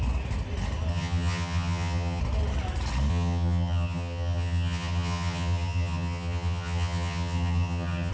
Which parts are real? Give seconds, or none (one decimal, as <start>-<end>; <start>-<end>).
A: 0.0-0.9; 2.2-3.1